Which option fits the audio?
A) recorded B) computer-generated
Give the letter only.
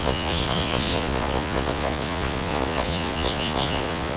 B